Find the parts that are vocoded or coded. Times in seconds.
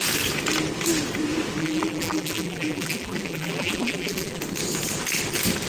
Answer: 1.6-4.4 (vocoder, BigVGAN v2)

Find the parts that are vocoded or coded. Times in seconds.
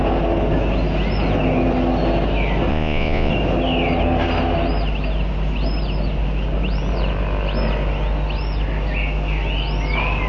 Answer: 2.7-3.3 (vocoder, Vocos)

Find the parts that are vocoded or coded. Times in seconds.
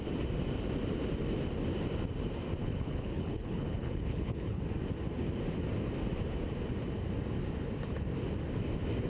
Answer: 2.6-4.6 (codec, HILCodec)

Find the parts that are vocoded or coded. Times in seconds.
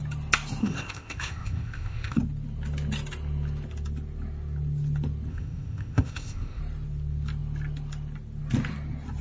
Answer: 0.6-2.2 (codec, ZipCodec); 5.3-6.6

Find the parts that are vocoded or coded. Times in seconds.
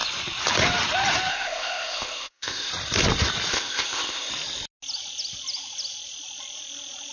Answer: 1.3-2.7 (codec, ZipCodec); 3.5-4.3